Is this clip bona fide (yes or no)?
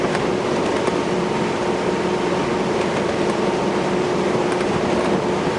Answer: yes